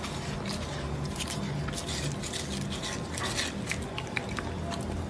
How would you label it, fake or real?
real